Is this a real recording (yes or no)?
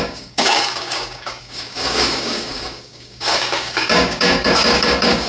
no